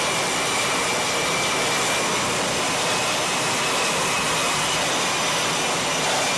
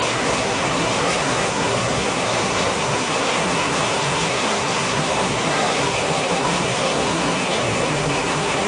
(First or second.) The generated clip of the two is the second